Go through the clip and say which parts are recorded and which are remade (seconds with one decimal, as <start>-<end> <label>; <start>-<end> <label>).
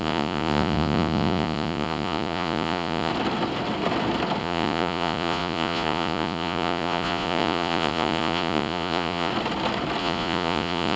0.0-3.1 remade; 3.1-4.4 recorded; 4.4-9.3 remade; 9.3-10.0 recorded; 10.0-11.0 remade